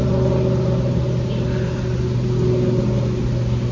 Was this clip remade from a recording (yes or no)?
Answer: no